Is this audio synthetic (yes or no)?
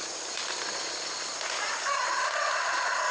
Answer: no